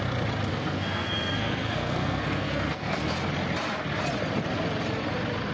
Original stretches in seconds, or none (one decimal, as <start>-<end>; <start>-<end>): 0.0-0.5; 3.0-5.5